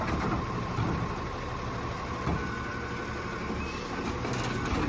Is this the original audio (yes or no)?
yes